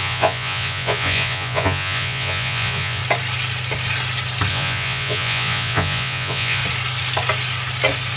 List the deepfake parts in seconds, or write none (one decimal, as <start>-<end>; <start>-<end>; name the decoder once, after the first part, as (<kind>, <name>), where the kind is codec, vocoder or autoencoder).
0.0-3.0 (vocoder, Vocos); 4.5-6.6